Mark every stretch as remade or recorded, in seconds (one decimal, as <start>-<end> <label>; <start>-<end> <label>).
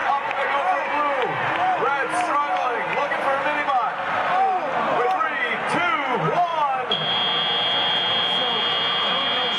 0.0-9.6 recorded